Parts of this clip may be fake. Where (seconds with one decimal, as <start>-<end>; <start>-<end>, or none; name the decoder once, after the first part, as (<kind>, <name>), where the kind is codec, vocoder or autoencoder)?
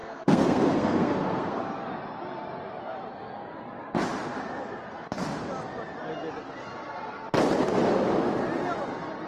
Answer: 0.0-1.6 (codec, SNAC)